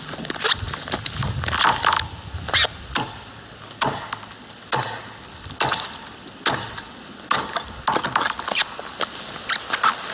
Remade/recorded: recorded